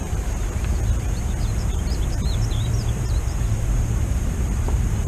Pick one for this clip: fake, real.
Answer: fake